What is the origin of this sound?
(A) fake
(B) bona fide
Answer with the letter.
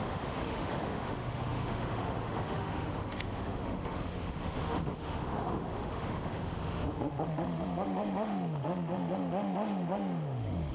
A